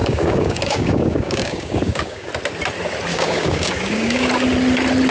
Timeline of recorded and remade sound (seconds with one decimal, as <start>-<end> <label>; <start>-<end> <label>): 0.0-2.3 remade; 2.3-3.1 recorded; 3.1-4.3 remade; 4.3-5.1 recorded